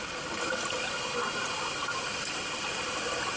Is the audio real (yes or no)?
yes